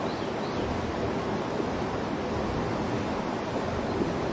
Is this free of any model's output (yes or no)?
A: yes